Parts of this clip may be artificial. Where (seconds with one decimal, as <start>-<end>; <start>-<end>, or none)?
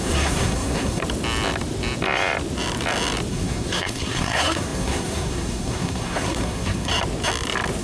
0.0-1.0; 3.3-6.9